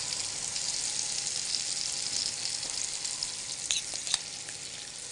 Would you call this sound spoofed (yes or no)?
no